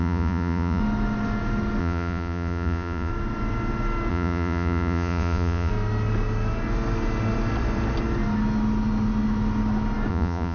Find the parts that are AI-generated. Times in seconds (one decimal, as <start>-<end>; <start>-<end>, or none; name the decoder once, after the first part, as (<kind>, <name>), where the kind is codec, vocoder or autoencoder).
0.0-0.8 (vocoder, Vocos); 1.8-3.1; 4.1-5.7; 10.1-10.5